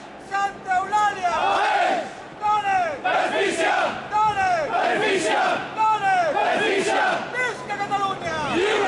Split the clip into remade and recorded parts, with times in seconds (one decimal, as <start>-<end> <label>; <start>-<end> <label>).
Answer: 0.0-8.9 recorded